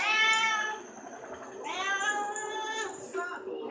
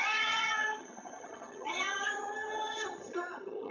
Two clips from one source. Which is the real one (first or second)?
first